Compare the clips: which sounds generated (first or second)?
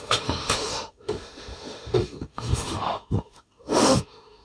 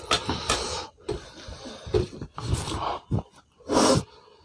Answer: first